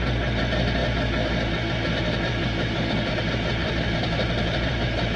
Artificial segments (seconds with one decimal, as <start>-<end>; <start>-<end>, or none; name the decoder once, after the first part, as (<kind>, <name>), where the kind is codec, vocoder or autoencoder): 3.6-5.2 (vocoder, BigVGAN v2)